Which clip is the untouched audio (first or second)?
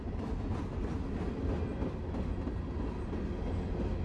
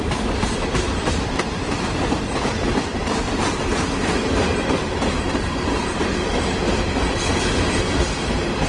first